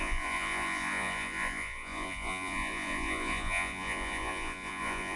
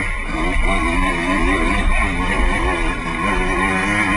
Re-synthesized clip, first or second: first